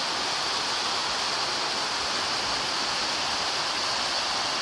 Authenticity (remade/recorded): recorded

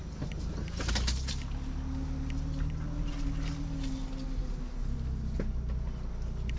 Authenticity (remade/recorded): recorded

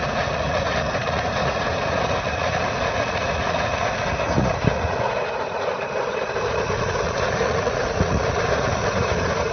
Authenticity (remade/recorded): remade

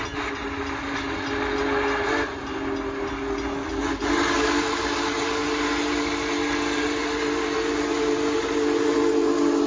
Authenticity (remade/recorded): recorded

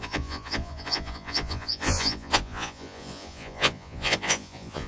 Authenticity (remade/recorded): remade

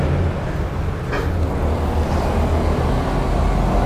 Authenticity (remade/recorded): recorded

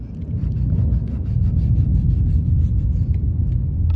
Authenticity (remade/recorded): recorded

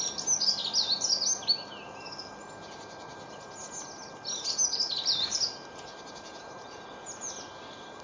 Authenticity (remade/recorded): recorded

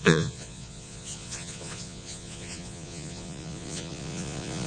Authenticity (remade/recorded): remade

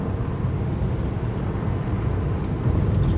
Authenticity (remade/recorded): recorded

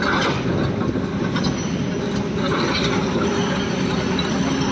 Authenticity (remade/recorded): recorded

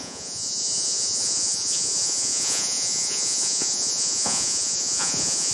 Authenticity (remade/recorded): remade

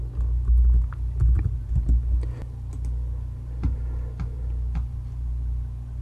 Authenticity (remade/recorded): recorded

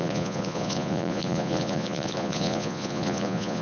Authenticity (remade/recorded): remade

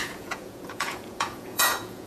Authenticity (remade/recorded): remade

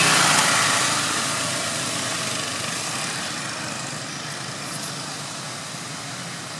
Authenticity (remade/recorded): recorded